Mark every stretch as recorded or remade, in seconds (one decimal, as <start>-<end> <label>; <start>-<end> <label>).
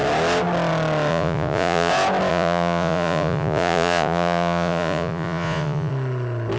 0.0-1.1 recorded; 1.1-1.9 remade; 1.9-2.3 recorded; 2.3-5.9 remade; 5.9-6.6 recorded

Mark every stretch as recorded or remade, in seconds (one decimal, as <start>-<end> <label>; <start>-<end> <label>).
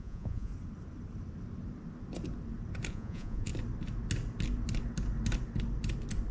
0.0-0.5 remade; 0.5-2.9 recorded; 2.9-3.5 remade; 3.5-6.3 recorded